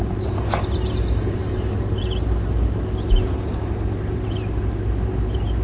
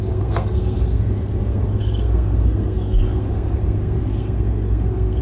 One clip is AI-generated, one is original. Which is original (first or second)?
first